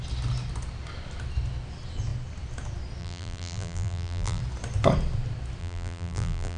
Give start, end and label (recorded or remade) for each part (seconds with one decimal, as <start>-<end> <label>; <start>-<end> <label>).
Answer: 0.0-3.0 recorded; 3.0-4.4 remade; 4.4-5.6 recorded; 5.6-6.6 remade

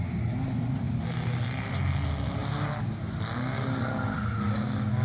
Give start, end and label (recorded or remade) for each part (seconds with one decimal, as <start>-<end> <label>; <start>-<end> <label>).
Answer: 0.0-5.0 recorded

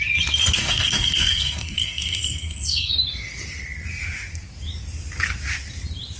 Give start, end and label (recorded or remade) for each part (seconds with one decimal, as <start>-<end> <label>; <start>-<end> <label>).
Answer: 0.0-0.6 recorded; 0.6-2.9 remade; 2.9-6.2 recorded

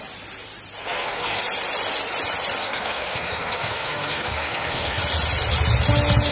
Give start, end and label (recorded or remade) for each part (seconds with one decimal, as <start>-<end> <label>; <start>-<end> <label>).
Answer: 0.0-0.8 recorded; 0.8-1.4 remade; 1.4-2.6 recorded; 2.6-5.0 remade; 5.0-6.3 recorded

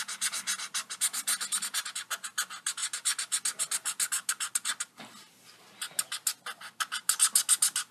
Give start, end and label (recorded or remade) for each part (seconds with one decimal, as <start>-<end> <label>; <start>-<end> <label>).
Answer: 0.0-7.9 recorded